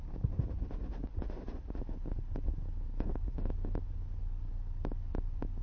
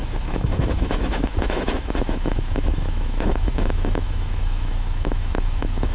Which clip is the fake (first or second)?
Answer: second